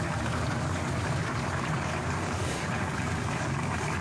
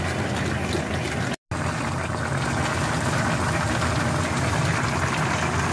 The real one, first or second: second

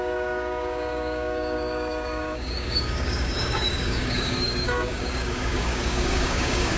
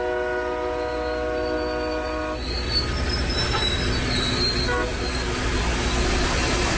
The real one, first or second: second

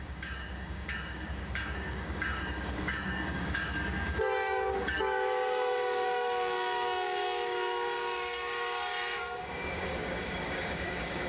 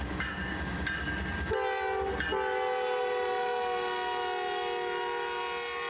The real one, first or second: second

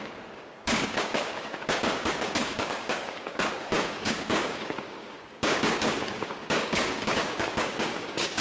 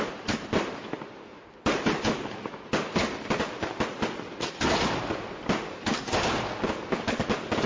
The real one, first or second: second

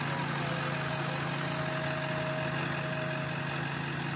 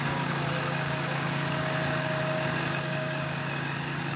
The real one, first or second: first